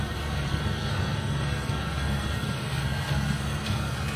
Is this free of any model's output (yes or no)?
no